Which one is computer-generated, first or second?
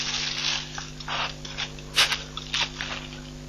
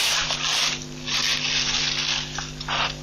second